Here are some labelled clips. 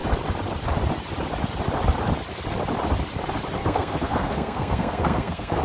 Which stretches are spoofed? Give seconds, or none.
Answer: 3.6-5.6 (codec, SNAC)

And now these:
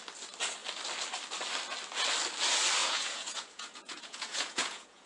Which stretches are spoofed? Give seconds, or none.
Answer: 2.8-5.1 (vocoder, Vocos)

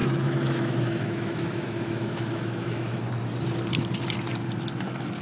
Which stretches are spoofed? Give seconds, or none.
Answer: 0.0-3.1 (autoencoder, DAC-VAE)

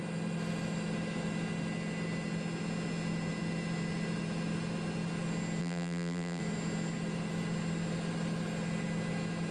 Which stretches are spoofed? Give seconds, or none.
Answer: 5.6-6.4 (vocoder, BigVGAN v2)

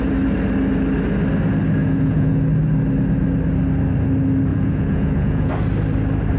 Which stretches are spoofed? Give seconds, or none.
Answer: 1.8-2.4 (vocoder, Vocos); 4.5-5.5

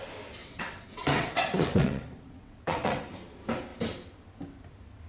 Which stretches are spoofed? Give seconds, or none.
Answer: 0.4-3.0 (vocoder, WaveNeXt)